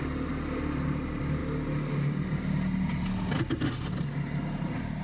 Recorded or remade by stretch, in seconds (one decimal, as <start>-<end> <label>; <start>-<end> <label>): 0.0-5.0 recorded